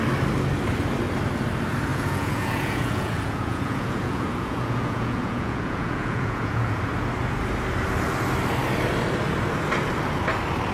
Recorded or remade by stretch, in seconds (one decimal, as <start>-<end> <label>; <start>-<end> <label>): 0.0-1.9 recorded; 1.9-6.8 remade; 6.8-10.7 recorded